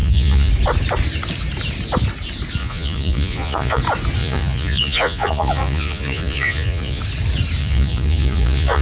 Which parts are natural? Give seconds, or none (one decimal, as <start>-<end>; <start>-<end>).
0.5-2.6; 3.8-4.2; 7.0-7.6

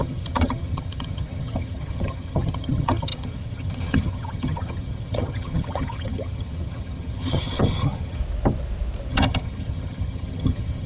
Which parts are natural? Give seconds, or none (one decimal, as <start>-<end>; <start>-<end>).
8.2-9.1